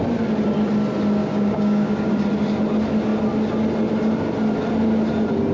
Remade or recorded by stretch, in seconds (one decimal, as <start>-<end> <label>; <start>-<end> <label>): 0.0-1.2 recorded; 1.2-2.1 remade; 2.1-5.5 recorded

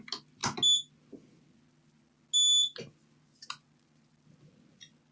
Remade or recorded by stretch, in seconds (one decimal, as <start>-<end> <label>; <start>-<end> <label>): 0.0-5.1 recorded